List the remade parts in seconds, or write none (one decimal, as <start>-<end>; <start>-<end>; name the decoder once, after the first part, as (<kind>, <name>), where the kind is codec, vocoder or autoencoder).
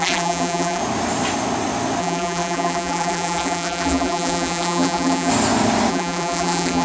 0.0-0.8 (vocoder, BigVGAN v2); 2.0-5.3; 5.9-6.8